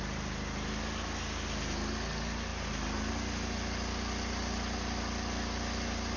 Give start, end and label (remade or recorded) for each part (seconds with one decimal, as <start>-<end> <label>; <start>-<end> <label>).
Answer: 0.0-6.2 recorded

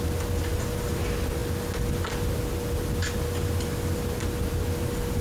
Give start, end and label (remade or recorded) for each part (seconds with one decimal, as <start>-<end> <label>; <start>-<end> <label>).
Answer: 0.0-5.2 recorded

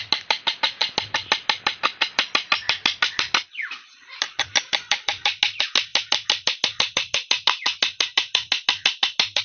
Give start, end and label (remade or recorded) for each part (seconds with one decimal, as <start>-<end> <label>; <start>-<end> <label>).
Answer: 0.0-9.4 recorded

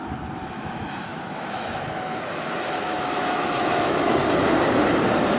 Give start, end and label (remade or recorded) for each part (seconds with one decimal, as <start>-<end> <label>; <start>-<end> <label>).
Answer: 0.0-4.2 remade; 4.2-5.4 recorded

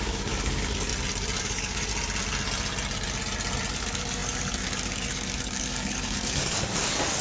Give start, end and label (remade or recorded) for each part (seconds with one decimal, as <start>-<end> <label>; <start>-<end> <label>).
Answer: 0.0-0.9 remade; 0.9-1.4 recorded; 1.4-1.9 remade; 1.9-3.7 recorded; 3.7-7.2 remade